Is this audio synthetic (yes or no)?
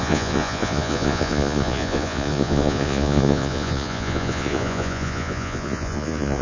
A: yes